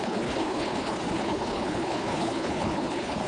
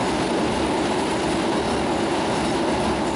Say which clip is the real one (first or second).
second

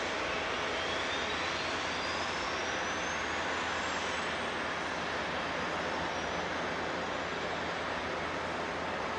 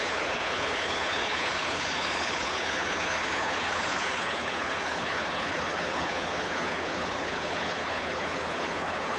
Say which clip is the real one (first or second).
first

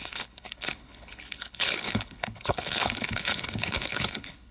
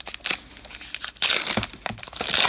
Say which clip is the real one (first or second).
second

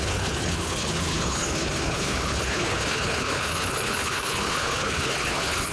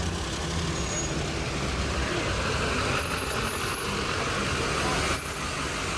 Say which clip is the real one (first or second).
second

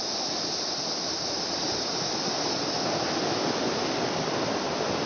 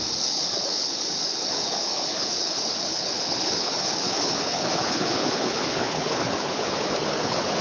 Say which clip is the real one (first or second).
first